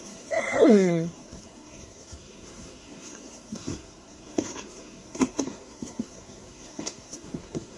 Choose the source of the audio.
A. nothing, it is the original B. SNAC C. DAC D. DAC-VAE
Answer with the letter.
B